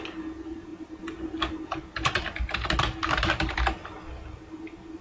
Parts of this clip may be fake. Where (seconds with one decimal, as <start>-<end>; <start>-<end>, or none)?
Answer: none